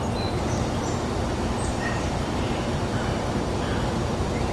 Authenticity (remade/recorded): remade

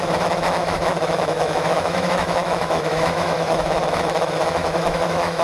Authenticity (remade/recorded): remade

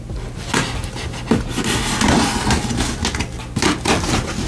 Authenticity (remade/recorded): recorded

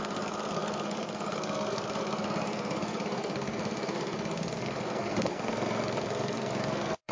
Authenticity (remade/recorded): remade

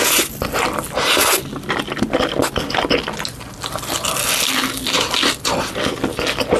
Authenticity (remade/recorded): recorded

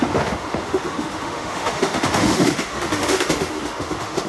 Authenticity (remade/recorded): remade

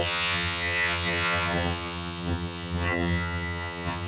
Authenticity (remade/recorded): remade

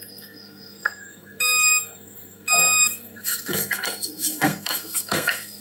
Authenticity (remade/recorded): remade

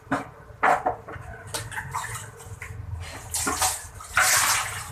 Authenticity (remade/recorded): recorded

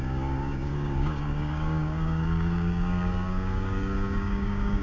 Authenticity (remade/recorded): remade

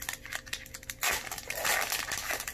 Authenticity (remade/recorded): recorded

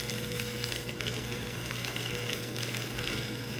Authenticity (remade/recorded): remade